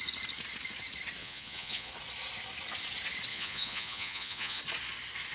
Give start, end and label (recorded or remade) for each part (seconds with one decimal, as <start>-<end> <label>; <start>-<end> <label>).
0.0-1.2 recorded; 1.2-1.9 remade; 1.9-3.3 recorded; 3.3-4.6 remade; 4.6-5.3 recorded